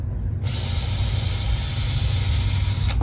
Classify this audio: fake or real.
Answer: real